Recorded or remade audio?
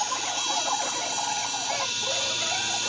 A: recorded